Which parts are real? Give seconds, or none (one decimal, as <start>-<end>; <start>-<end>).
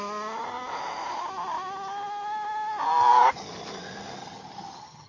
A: 0.0-4.2